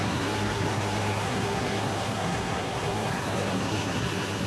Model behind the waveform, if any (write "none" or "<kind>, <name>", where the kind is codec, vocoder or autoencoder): codec, SNAC